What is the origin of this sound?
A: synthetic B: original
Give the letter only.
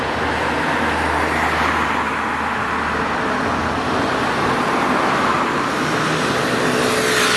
B